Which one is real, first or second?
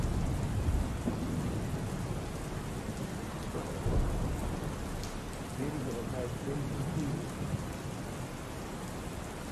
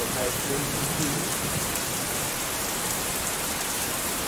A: first